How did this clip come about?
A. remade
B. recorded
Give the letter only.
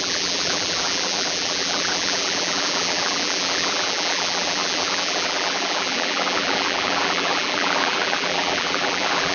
A